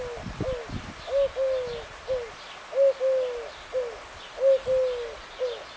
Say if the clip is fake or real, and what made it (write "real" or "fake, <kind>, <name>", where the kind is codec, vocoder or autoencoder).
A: real